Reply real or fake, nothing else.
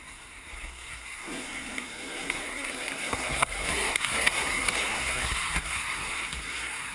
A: fake